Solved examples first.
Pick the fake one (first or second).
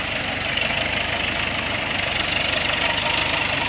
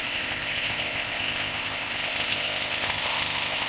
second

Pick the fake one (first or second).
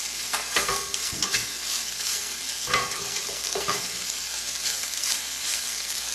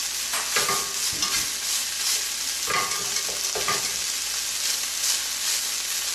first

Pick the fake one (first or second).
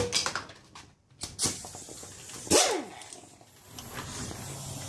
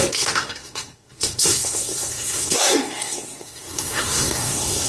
second